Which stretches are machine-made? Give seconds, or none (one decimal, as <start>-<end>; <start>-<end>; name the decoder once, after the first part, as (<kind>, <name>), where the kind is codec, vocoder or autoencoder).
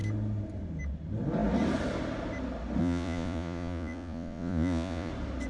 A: 2.8-5.1 (vocoder, Vocos)